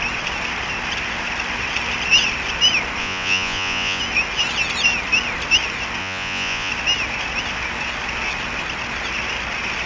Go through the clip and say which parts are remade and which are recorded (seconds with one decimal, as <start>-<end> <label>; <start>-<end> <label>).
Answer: 0.0-3.0 recorded; 3.0-4.0 remade; 4.0-6.0 recorded; 6.0-6.7 remade; 6.7-9.9 recorded